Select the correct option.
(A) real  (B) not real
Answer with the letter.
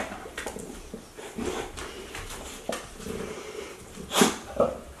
A